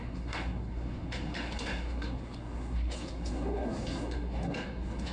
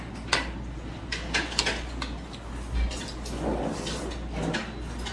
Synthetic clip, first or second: first